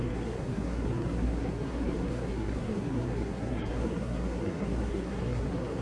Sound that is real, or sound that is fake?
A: fake